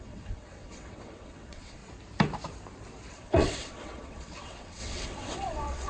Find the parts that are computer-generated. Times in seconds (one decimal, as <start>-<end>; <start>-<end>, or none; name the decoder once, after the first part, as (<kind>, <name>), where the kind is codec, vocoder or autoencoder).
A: 0.0-1.8 (vocoder, WaveNeXt); 3.1-5.9